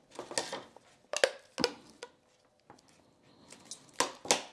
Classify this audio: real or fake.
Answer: real